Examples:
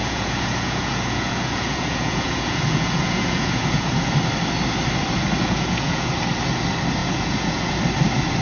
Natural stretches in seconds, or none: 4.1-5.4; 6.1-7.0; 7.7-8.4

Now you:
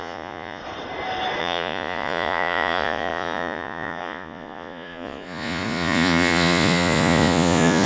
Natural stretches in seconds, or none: 0.6-1.4

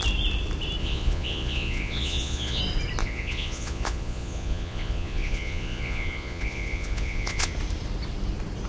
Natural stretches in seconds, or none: 0.0-0.8; 2.6-3.0; 7.5-8.7